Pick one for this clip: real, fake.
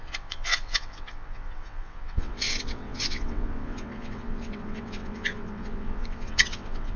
fake